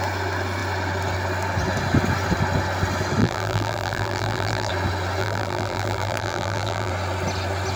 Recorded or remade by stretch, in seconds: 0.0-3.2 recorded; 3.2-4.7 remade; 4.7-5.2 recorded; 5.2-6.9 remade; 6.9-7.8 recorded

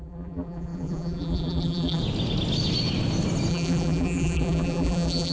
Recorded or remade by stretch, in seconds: 0.0-2.0 remade; 2.0-3.5 recorded; 3.5-5.3 remade

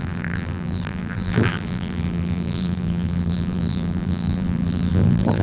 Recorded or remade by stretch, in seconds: 0.0-5.4 remade

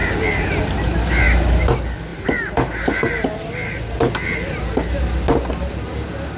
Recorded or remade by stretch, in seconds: 0.0-6.4 recorded